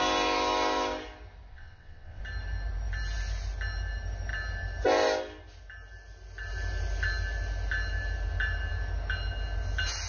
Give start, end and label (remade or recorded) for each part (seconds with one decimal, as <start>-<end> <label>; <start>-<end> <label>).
0.0-1.5 recorded; 1.5-2.2 remade; 2.2-10.1 recorded